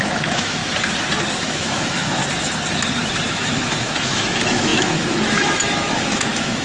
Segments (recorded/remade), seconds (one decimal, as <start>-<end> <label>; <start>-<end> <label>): 0.0-0.6 remade; 0.6-1.4 recorded; 1.4-2.2 remade; 2.2-3.3 recorded; 3.3-6.6 remade